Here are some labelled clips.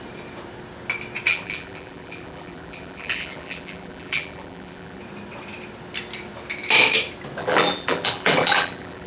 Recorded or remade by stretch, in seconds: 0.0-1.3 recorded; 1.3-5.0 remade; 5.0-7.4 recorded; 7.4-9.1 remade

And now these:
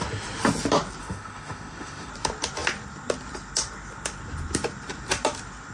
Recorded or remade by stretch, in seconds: 0.0-1.0 recorded; 1.0-2.1 remade; 2.1-5.7 recorded

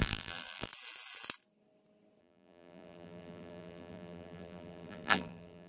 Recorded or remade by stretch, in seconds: 0.0-0.7 remade; 0.7-2.2 recorded; 2.2-5.7 remade